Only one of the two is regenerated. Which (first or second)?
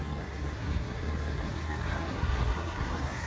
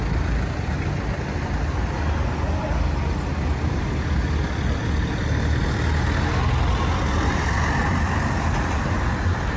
first